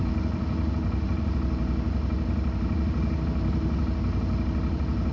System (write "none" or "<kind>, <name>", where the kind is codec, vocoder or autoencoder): none